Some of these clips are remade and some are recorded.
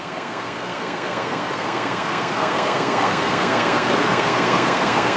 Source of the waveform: remade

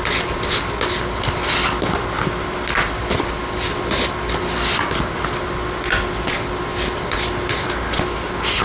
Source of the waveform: recorded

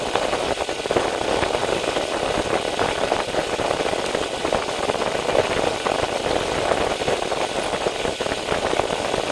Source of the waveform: recorded